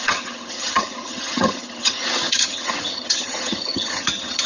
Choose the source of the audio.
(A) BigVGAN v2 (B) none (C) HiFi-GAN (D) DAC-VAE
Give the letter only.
C